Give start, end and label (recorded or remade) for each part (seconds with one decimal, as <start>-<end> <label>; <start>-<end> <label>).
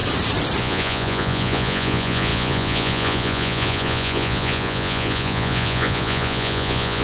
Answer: 0.0-0.6 recorded; 0.6-7.0 remade